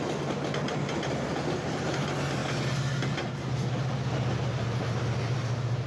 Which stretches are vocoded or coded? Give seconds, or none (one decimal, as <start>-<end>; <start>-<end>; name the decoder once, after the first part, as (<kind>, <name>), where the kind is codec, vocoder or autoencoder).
none